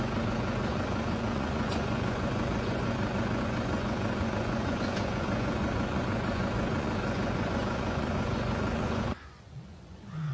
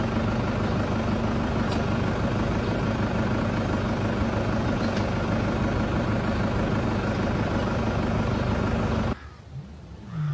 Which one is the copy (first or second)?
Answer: first